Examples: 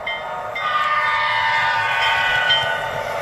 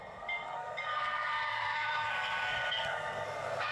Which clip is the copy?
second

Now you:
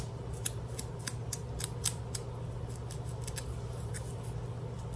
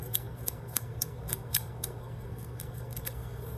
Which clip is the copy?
second